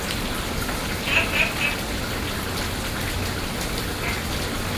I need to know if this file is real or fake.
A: real